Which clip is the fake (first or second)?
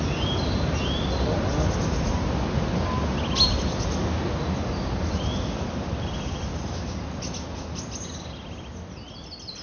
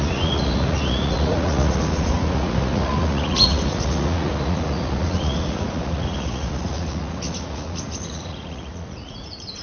second